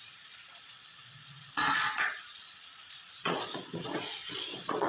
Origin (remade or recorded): remade